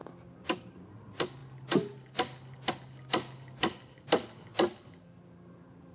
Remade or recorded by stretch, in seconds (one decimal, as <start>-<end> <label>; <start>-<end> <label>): 0.0-5.9 recorded